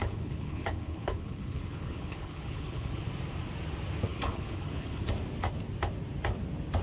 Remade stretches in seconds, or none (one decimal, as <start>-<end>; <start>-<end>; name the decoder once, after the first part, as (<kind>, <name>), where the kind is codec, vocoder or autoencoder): 0.0-3.1 (codec, HILCodec); 4.1-5.1

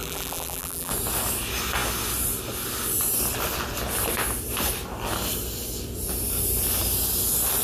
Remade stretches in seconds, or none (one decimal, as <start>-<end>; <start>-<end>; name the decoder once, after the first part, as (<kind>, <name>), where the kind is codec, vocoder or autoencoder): 0.0-0.9 (vocoder, BigVGAN v2)

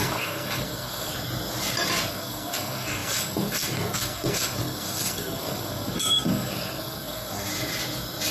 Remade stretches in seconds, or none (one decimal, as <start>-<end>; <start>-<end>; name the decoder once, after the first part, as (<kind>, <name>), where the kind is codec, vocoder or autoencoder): 0.0-1.1 (codec, SNAC); 2.1-7.5

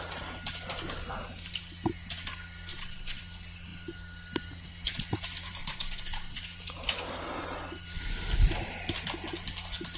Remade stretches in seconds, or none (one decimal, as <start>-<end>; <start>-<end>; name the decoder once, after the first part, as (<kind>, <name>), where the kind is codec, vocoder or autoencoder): 2.7-3.2 (vocoder, Vocos); 5.6-6.4

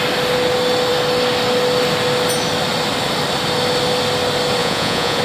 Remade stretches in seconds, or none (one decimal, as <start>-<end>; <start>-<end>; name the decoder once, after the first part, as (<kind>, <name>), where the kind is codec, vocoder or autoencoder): 4.6-5.2 (vocoder, Vocos)

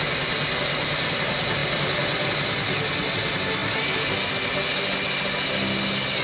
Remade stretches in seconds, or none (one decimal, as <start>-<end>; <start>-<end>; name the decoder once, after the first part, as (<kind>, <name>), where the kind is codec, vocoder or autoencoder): none